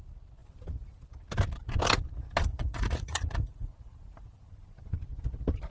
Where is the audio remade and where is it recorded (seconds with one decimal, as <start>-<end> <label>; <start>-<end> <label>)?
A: 0.0-2.5 recorded; 2.5-3.7 remade; 3.7-5.7 recorded